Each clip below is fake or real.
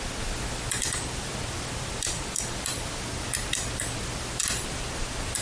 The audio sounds real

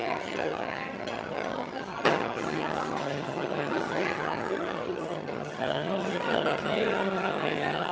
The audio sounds fake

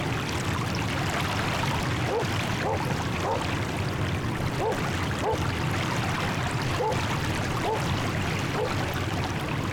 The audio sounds real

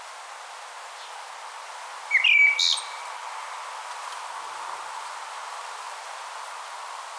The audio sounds real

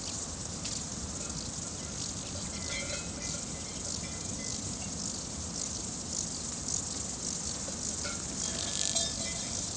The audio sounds real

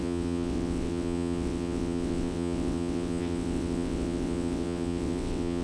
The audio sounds fake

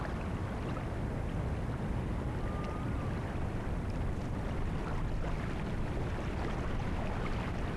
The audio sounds real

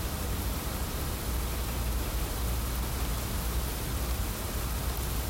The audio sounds real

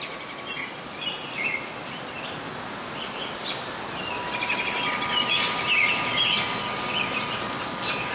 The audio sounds real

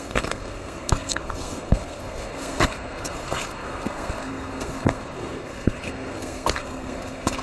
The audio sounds fake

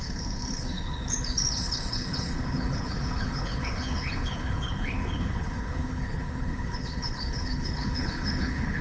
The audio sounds fake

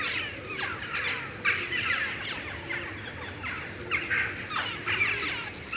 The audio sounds real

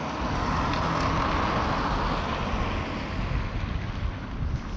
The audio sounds real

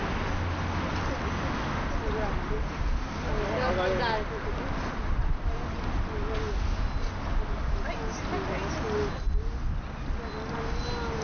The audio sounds real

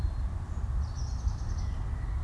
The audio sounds real